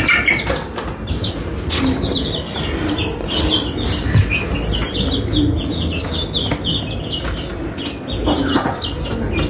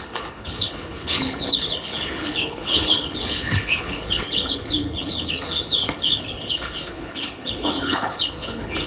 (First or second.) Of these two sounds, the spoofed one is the second